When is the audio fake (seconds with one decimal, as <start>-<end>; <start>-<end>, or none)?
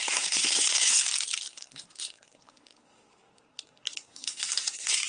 0.0-1.0; 1.5-5.1